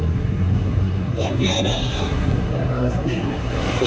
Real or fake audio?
fake